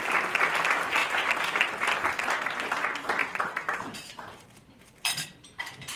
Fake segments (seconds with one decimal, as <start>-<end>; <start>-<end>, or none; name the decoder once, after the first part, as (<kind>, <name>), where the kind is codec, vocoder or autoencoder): 1.0-2.0 (vocoder, BigVGAN v2); 3.2-6.0